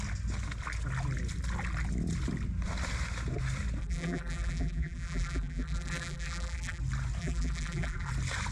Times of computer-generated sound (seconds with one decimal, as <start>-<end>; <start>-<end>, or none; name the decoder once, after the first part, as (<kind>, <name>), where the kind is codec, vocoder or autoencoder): 3.8-6.8 (vocoder, BigVGAN v2); 7.2-8.1